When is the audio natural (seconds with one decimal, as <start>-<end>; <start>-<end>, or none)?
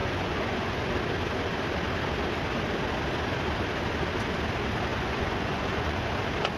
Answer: 0.9-4.9; 6.1-6.6